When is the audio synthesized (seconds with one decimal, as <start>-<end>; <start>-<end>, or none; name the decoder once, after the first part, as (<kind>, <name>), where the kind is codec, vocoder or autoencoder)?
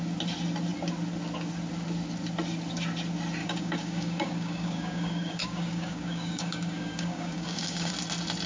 3.4-7.9 (codec, DAC)